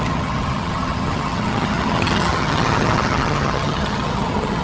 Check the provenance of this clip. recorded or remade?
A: remade